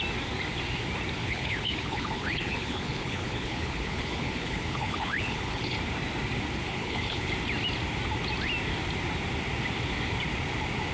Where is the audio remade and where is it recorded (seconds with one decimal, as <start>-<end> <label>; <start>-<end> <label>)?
0.0-1.2 recorded; 1.2-5.8 remade; 5.8-6.6 recorded; 6.6-7.3 remade; 7.3-10.9 recorded